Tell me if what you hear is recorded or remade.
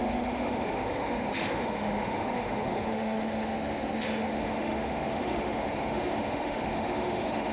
remade